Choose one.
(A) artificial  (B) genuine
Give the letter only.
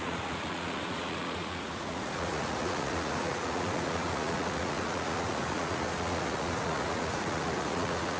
A